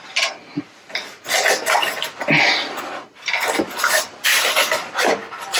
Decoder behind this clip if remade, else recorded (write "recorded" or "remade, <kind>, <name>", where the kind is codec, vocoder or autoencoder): recorded